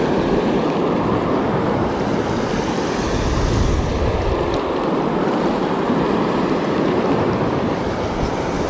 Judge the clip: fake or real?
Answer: real